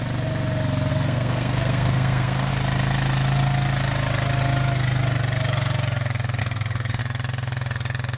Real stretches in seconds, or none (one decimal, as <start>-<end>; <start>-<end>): 0.0-0.9; 2.5-6.4; 7.0-8.2